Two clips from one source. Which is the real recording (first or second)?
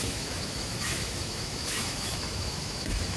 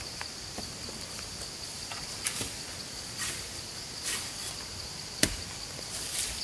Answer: second